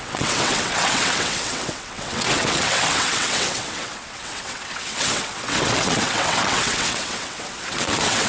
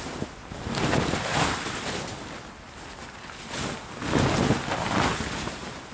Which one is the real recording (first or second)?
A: second